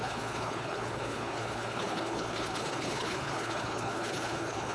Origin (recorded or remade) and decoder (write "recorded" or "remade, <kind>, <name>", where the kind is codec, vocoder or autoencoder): remade, codec, HILCodec